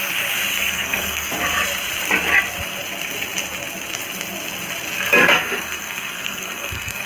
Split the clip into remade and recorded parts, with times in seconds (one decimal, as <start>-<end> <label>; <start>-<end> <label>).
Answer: 0.0-0.5 recorded; 0.5-1.3 remade; 1.3-5.2 recorded; 5.2-7.1 remade